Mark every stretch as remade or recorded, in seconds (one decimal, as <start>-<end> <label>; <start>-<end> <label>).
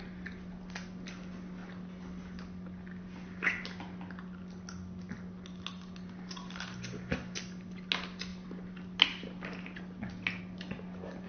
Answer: 0.0-11.3 recorded